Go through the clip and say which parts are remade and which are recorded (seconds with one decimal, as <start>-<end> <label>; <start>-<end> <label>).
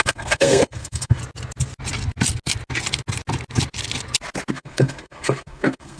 0.0-1.2 remade; 1.2-4.5 recorded; 4.5-6.0 remade